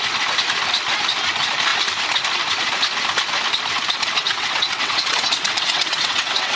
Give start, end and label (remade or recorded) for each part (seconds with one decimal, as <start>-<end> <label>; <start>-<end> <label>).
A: 0.0-4.2 recorded; 4.2-6.6 remade